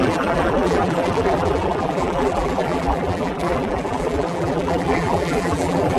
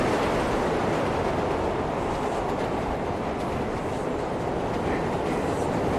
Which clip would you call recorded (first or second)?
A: second